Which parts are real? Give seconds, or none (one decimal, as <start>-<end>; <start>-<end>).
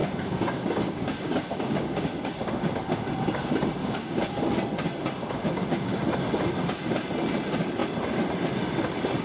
3.0-3.8; 4.4-5.2; 6.0-9.2